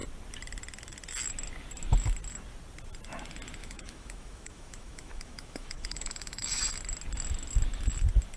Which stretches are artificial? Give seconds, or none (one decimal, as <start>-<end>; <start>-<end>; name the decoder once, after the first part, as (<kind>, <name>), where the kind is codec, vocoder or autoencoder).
3.6-6.7 (autoencoder, DAC-VAE)